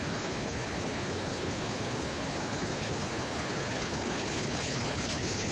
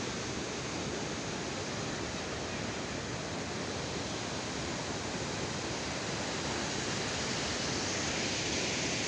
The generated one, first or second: first